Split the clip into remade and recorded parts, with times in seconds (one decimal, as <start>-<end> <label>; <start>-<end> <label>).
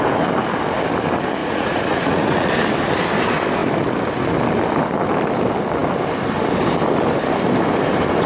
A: 0.0-1.4 recorded; 1.4-2.5 remade; 2.5-8.3 recorded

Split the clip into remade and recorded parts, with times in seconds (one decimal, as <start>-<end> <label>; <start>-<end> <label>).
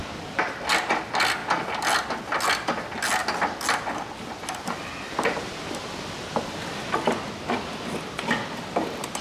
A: 0.0-4.9 recorded; 4.9-5.8 remade; 5.8-9.2 recorded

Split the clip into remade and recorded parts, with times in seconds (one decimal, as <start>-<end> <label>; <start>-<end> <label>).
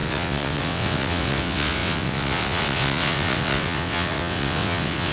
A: 0.0-5.1 remade